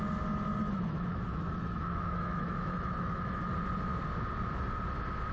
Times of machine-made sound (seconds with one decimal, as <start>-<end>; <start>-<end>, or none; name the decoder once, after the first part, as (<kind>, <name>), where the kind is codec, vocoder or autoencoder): 0.6-3.4 (autoencoder, DAC-VAE)